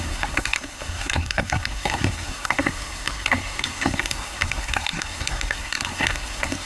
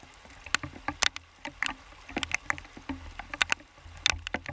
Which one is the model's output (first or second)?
first